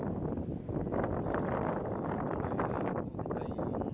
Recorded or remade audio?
recorded